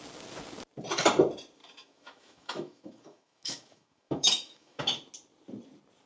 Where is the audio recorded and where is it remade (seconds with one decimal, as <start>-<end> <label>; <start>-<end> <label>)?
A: 0.0-1.6 recorded; 1.6-4.8 remade; 4.8-6.1 recorded